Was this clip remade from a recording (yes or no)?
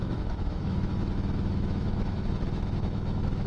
yes